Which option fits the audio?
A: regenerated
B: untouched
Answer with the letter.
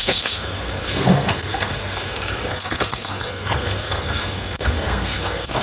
A